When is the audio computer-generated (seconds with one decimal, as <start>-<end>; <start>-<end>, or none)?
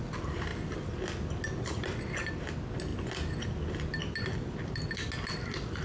none